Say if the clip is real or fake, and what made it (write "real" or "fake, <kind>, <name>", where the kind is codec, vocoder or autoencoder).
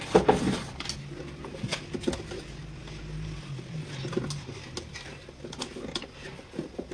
real